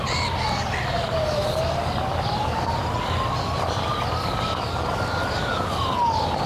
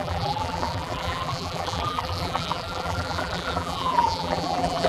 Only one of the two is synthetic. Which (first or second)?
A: second